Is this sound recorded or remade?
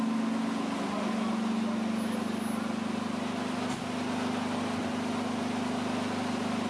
recorded